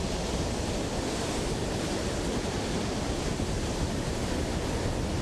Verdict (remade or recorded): recorded